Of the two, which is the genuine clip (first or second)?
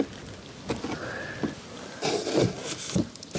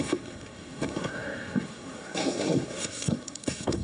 first